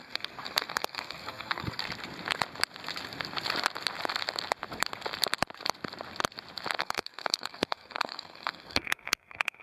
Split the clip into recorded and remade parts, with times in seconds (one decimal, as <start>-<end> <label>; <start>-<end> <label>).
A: 0.0-1.8 remade; 1.8-6.8 recorded; 6.8-9.6 remade